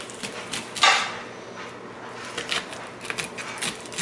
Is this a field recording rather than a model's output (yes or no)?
yes